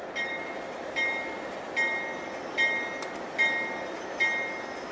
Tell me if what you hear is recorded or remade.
recorded